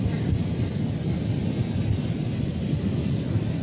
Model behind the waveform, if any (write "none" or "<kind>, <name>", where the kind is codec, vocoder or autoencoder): none